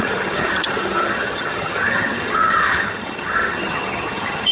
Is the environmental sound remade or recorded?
remade